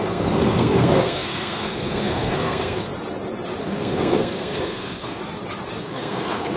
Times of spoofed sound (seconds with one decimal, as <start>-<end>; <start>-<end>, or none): 0.0-2.9; 3.6-5.2; 5.8-6.6